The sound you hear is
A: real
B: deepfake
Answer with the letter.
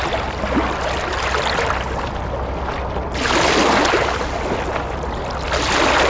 A